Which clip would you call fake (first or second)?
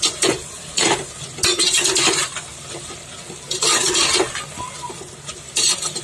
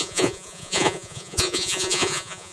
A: second